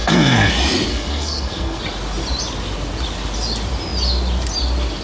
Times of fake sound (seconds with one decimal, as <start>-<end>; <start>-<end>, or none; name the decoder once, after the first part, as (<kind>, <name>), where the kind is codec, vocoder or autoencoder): 0.0-0.5 (codec, SNAC); 0.9-1.8